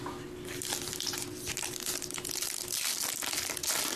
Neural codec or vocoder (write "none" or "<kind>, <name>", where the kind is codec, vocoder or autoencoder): none